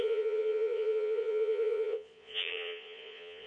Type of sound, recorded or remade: remade